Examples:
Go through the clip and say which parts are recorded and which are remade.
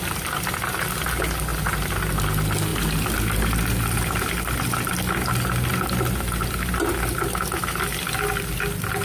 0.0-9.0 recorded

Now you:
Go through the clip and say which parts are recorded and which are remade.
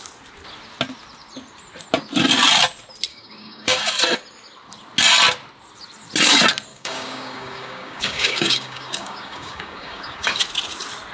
0.0-3.1 recorded; 3.1-3.9 remade; 3.9-6.7 recorded; 6.7-10.4 remade; 10.4-11.1 recorded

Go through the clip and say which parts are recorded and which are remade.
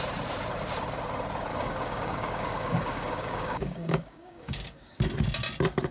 0.0-1.5 recorded; 1.5-5.0 remade; 5.0-5.9 recorded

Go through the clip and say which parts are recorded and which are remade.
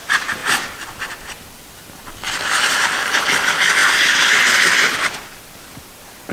0.0-6.3 recorded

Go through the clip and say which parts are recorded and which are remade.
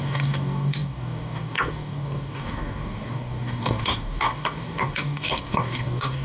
0.0-6.2 remade